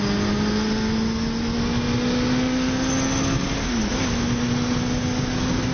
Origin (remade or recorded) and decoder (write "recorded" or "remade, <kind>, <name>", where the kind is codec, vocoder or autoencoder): recorded